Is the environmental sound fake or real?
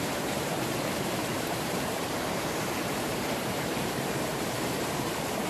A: fake